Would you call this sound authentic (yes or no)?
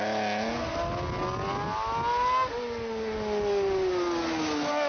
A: yes